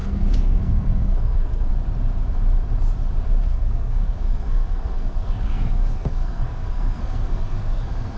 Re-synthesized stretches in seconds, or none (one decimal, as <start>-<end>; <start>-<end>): 0.0-1.7; 3.5-8.2